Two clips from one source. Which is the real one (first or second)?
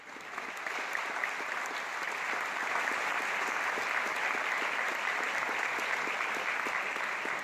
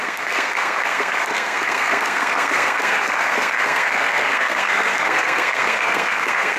first